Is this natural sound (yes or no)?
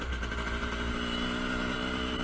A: yes